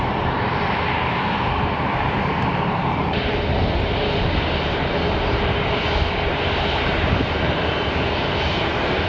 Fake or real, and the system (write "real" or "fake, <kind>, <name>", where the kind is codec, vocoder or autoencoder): fake, vocoder, BigVGAN v2